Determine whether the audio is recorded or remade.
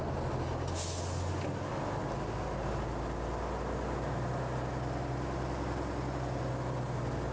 recorded